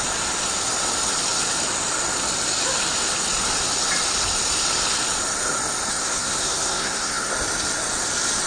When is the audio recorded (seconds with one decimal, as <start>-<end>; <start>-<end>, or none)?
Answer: 0.0-5.9; 7.3-8.5

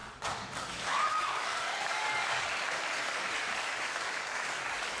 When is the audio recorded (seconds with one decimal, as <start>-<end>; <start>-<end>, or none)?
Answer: none

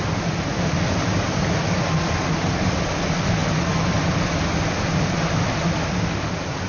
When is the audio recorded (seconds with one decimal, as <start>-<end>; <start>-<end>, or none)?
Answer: 0.0-6.7

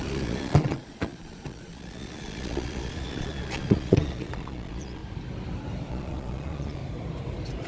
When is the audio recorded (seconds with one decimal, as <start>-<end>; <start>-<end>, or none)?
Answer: 5.0-5.9; 6.8-7.7

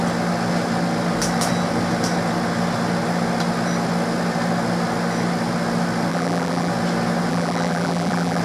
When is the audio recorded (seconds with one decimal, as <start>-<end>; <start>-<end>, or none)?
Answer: 0.0-6.1; 6.7-7.3

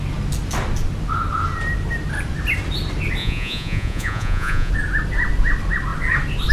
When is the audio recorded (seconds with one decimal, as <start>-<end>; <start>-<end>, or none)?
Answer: 0.0-3.2; 4.7-6.5